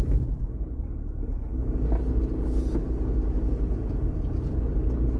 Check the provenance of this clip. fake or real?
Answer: real